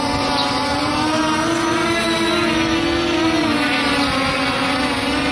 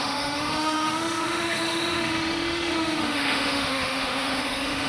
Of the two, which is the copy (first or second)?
second